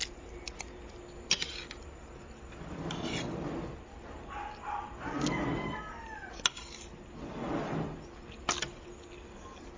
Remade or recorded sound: recorded